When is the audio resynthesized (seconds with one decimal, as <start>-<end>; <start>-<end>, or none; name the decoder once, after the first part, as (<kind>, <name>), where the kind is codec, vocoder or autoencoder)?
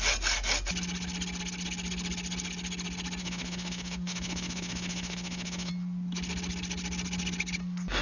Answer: 3.2-5.7 (autoencoder, DAC-VAE)